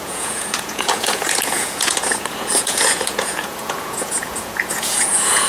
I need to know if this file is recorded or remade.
remade